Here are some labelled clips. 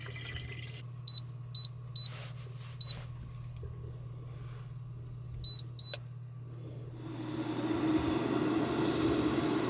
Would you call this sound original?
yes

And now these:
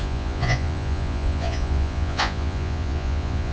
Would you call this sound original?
no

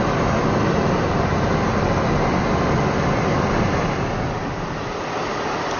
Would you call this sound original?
yes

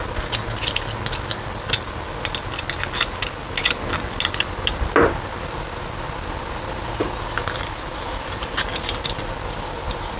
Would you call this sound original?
yes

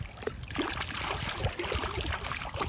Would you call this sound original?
yes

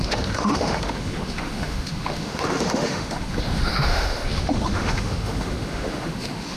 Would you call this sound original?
no